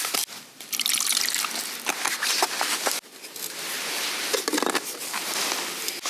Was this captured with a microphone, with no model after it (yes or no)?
yes